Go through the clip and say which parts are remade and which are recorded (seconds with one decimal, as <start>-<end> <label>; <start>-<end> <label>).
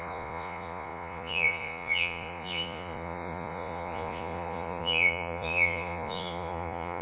0.0-7.0 remade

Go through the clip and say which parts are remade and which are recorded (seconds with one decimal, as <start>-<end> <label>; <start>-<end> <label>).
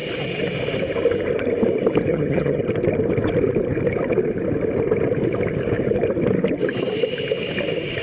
0.0-2.1 recorded; 2.1-2.6 remade; 2.6-8.0 recorded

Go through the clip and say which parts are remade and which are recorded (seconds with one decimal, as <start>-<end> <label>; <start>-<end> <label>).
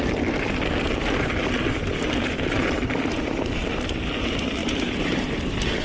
0.0-4.6 recorded; 4.6-5.3 remade; 5.3-5.8 recorded